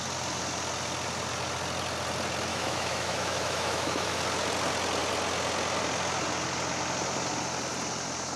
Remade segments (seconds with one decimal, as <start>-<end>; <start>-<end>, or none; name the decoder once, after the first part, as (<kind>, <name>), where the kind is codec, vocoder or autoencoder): 2.5-4.2 (autoencoder, DAC-VAE)